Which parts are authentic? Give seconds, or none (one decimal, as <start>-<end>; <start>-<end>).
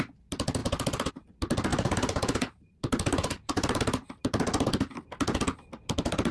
0.0-1.7; 4.4-6.3